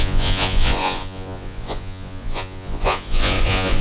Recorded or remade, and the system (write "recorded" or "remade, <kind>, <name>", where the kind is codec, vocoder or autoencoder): remade, vocoder, Vocos